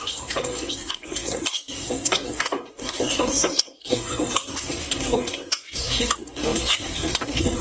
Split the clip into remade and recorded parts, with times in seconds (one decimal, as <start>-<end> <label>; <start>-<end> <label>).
0.0-7.6 remade